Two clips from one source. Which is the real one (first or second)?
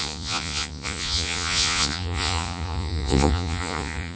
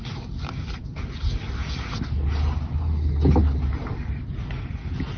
second